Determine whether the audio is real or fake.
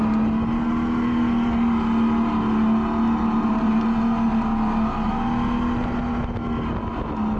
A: real